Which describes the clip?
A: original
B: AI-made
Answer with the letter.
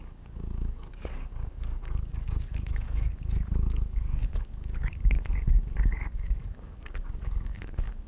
B